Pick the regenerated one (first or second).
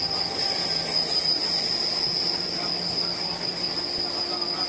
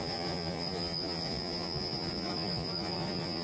second